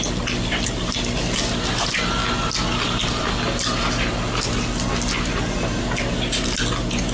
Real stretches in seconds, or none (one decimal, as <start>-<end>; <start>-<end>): 0.0-7.1